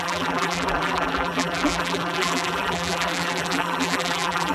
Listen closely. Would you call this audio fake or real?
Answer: fake